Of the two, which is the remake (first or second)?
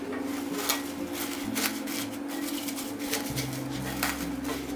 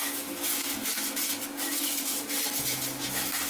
second